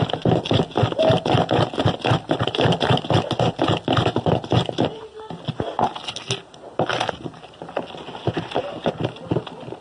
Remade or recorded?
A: recorded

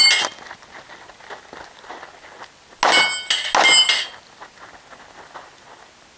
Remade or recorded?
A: recorded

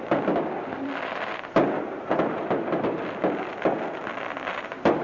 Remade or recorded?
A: recorded